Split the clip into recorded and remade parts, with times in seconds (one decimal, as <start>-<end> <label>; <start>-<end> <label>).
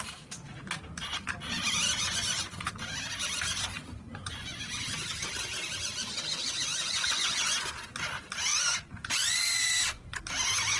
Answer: 0.0-2.0 recorded; 2.0-2.7 remade; 2.7-3.7 recorded; 3.7-5.0 remade; 5.0-6.7 recorded; 6.7-7.7 remade; 7.7-8.5 recorded; 8.5-10.2 remade; 10.2-10.8 recorded